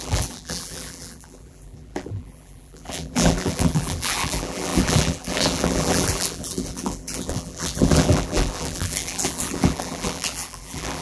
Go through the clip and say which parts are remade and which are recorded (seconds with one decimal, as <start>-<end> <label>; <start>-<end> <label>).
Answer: 0.0-11.0 remade